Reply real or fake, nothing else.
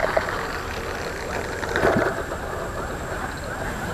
real